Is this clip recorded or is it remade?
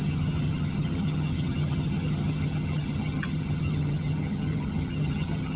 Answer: remade